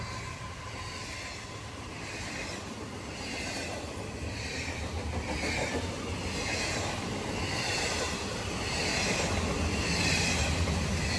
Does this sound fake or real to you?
real